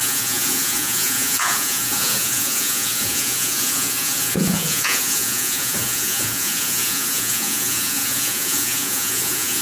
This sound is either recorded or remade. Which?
remade